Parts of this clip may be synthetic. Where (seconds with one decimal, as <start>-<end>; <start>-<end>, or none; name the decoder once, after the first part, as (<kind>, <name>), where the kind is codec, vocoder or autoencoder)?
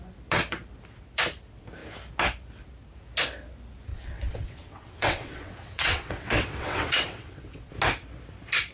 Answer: 3.9-7.7 (vocoder, WaveNeXt)